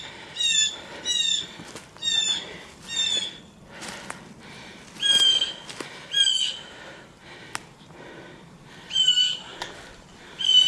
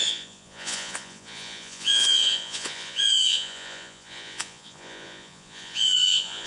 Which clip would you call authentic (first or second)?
first